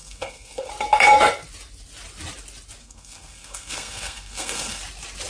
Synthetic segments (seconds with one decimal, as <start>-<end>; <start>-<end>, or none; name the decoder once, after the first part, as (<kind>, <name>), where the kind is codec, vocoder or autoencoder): 0.0-0.7 (codec, SNAC); 2.8-4.8

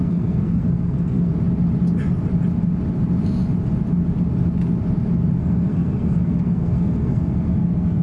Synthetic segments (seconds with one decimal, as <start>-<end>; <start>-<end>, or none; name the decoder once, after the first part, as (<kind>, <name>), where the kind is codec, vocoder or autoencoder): 0.0-1.3 (codec, SNAC); 5.4-8.0

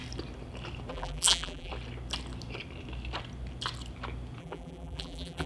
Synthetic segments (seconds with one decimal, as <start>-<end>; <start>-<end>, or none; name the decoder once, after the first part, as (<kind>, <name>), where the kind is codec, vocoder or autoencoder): 0.9-1.7 (vocoder, BigVGAN v2); 4.4-5.5